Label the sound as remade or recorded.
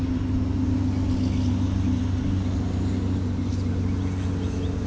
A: recorded